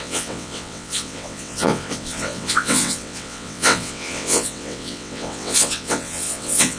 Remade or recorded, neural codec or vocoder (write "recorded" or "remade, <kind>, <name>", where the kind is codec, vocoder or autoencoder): remade, vocoder, WaveNeXt